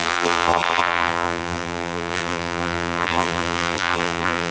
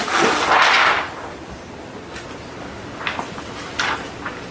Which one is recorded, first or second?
second